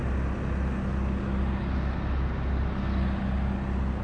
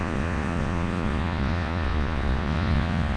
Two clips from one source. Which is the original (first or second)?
first